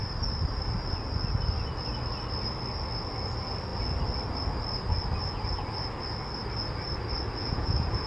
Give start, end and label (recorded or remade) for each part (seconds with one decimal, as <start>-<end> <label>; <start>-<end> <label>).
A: 0.0-7.4 recorded; 7.4-8.1 remade